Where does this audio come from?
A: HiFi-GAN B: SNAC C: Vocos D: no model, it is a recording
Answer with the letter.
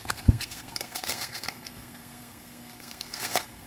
B